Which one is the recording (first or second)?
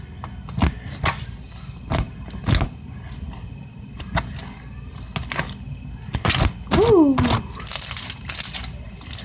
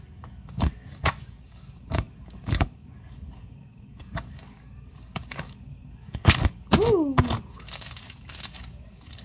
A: first